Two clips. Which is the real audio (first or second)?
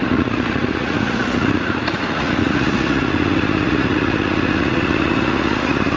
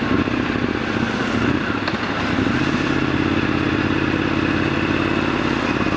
second